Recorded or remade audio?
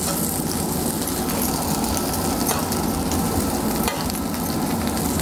remade